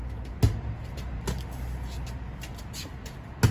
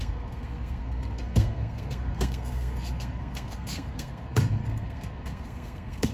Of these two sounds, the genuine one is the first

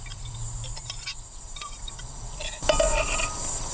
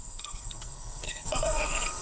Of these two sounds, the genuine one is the first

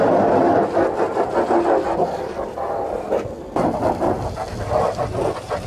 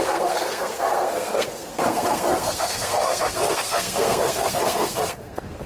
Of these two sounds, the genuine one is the first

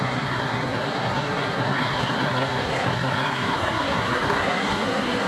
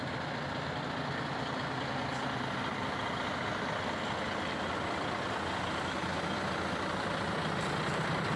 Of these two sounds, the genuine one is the second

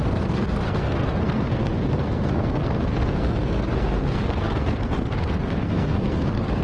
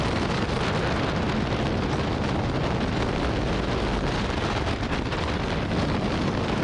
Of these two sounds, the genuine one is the second